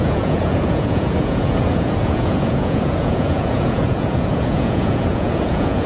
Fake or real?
fake